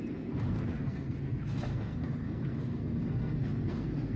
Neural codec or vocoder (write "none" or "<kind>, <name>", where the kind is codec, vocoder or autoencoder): codec, SNAC